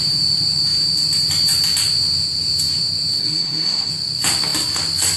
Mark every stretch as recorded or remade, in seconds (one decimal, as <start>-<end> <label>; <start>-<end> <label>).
0.0-3.2 recorded; 3.2-3.9 remade; 3.9-5.2 recorded